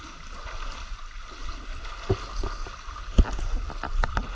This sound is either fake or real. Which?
real